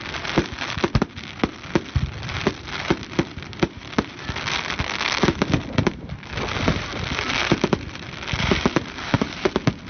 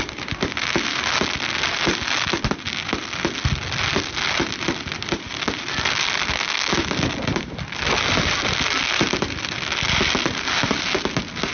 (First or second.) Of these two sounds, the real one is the second